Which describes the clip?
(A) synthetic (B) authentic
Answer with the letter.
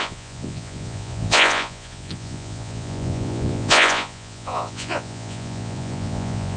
A